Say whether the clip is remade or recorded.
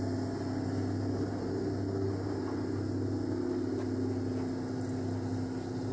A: recorded